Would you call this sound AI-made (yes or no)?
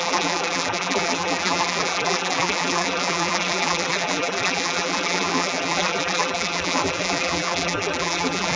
yes